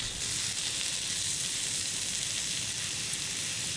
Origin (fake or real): real